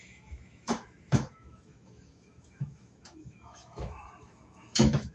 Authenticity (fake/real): fake